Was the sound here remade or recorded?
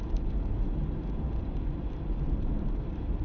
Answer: recorded